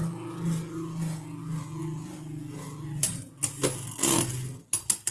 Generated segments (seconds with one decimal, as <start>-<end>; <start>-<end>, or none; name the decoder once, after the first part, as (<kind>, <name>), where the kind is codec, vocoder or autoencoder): none